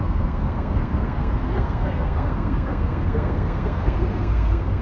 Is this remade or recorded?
remade